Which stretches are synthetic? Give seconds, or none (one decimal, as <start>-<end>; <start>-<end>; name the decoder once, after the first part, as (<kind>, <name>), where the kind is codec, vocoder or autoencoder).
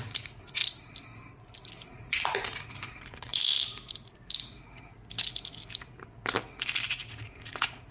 0.0-0.6 (vocoder, Vocos); 1.9-3.3; 6.9-7.9